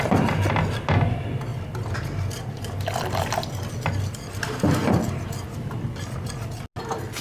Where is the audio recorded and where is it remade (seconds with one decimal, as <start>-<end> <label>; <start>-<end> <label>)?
0.0-7.2 recorded